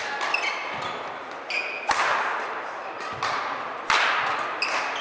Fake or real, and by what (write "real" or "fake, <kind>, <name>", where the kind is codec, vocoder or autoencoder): real